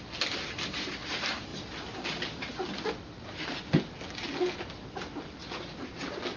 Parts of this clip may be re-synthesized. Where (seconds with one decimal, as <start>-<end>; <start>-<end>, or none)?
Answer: 5.4-6.0